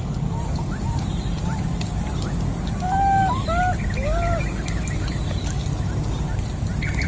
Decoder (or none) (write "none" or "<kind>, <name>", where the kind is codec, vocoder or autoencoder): none